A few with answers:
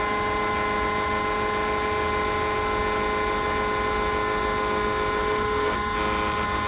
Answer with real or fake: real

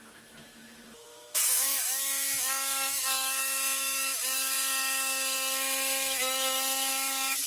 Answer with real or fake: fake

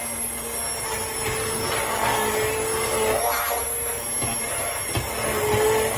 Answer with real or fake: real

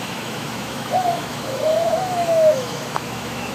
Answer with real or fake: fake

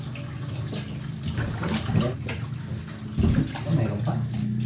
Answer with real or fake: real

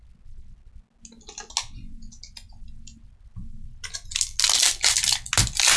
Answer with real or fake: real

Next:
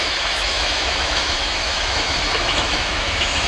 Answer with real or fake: fake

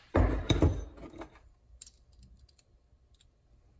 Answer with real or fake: real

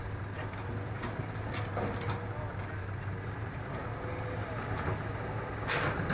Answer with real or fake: real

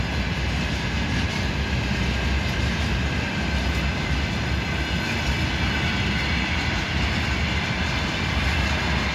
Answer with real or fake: real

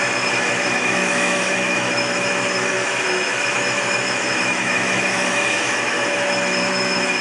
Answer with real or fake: fake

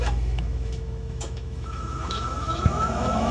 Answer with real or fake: fake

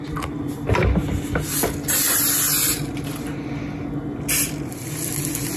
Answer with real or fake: real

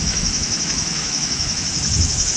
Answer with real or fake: fake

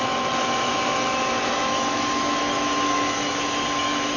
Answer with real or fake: fake